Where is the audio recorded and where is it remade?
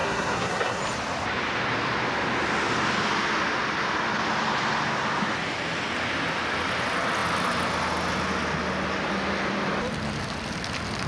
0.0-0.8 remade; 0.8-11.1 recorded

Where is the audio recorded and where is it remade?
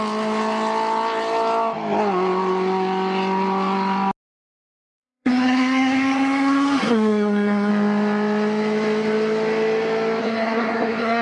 0.0-4.5 recorded; 4.5-7.7 remade; 7.7-10.2 recorded; 10.2-11.2 remade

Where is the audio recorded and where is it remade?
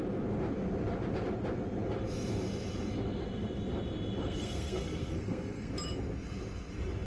0.0-4.2 recorded; 4.2-5.7 remade; 5.7-7.1 recorded